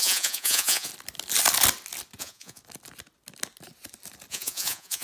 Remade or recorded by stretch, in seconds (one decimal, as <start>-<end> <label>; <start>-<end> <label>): 0.0-0.9 remade; 0.9-2.2 recorded; 2.2-2.6 remade; 2.6-4.3 recorded; 4.3-5.0 remade